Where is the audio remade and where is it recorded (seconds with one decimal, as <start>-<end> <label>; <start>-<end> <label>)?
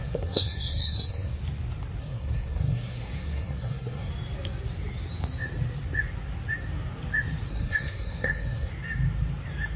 0.0-1.4 remade; 1.4-2.0 recorded; 2.0-4.1 remade; 4.1-7.5 recorded; 7.5-8.7 remade; 8.7-9.8 recorded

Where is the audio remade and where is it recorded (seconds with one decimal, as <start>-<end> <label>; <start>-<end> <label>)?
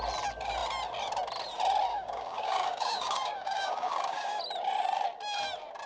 0.0-1.9 recorded; 1.9-4.4 remade; 4.4-5.9 recorded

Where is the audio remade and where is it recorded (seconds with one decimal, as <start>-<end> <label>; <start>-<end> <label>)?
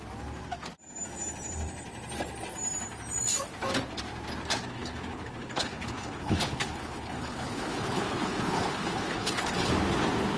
0.0-4.7 recorded; 4.7-9.7 remade; 9.7-10.4 recorded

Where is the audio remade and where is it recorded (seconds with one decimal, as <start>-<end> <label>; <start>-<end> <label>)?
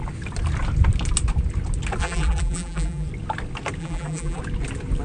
0.0-2.0 recorded; 2.0-3.1 remade; 3.1-3.8 recorded; 3.8-4.4 remade; 4.4-5.0 recorded